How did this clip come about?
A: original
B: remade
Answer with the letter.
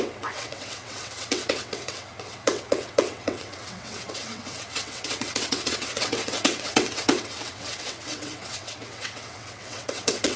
B